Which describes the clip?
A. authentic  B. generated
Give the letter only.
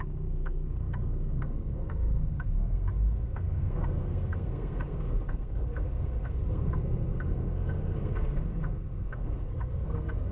B